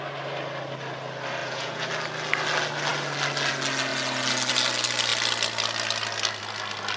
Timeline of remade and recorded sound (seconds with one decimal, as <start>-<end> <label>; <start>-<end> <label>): 0.0-1.4 recorded; 1.4-1.9 remade; 1.9-7.0 recorded